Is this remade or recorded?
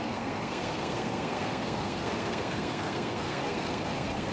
remade